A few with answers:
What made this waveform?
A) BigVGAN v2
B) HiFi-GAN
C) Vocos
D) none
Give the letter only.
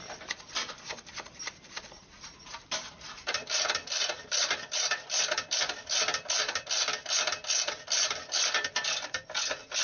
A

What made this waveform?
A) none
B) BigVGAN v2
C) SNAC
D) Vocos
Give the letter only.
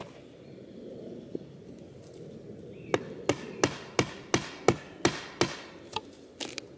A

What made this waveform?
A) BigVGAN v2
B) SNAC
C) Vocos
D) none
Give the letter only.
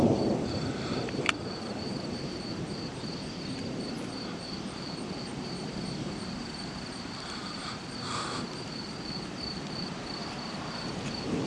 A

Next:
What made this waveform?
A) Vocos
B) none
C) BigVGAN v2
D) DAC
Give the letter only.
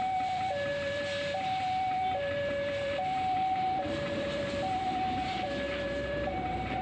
C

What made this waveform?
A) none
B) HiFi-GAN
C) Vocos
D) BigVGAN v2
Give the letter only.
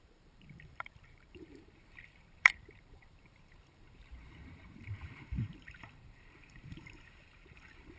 D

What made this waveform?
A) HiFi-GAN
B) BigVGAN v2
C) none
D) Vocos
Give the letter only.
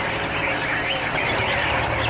C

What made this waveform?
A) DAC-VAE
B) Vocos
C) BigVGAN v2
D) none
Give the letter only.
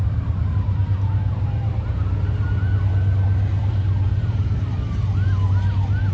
D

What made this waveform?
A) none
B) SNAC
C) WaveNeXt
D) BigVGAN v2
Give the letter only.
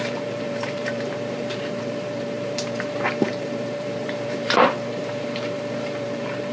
D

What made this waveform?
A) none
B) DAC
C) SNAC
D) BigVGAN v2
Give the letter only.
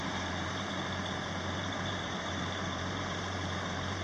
D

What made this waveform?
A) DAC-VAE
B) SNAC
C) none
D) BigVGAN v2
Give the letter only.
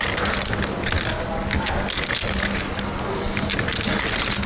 C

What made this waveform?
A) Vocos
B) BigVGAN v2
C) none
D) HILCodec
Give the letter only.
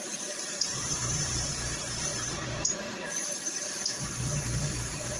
B